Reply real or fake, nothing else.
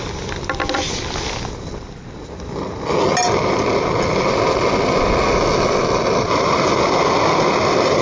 real